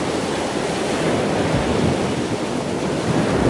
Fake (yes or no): no